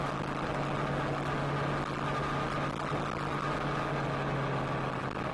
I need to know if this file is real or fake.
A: real